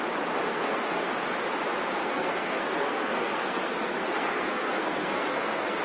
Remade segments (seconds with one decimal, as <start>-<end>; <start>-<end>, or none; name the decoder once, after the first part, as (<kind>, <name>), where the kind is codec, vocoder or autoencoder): 0.5-1.1 (codec, SNAC); 2.0-5.8